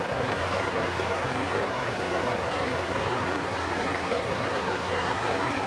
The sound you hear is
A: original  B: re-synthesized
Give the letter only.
B